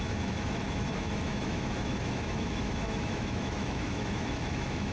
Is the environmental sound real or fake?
fake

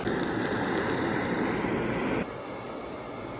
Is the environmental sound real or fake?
real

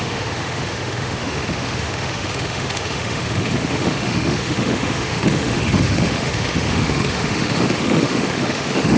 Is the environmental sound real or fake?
fake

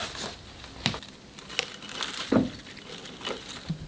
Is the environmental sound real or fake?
real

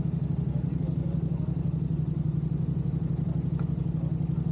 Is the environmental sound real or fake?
real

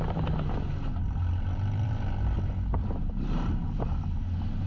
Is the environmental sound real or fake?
real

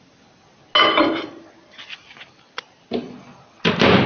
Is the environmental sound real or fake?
real